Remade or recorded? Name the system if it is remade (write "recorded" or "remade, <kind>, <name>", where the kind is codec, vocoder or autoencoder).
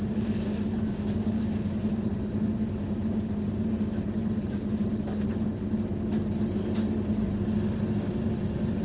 recorded